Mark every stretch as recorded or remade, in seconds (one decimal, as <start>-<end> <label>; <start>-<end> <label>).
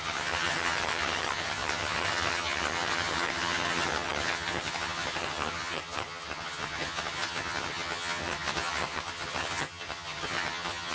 0.0-10.9 remade